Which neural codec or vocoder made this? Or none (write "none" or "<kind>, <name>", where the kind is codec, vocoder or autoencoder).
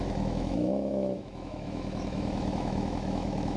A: autoencoder, DAC-VAE